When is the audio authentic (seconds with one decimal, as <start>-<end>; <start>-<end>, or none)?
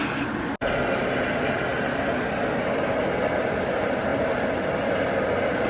0.0-5.7